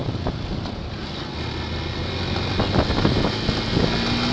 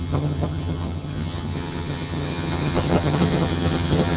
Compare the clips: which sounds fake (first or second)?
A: second